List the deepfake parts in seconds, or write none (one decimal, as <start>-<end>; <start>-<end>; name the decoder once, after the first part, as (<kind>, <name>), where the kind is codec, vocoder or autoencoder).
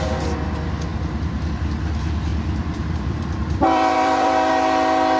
2.3-4.5 (vocoder, BigVGAN v2)